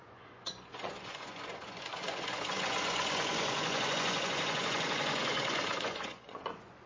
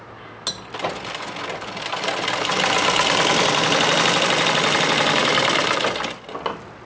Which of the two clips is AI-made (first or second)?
first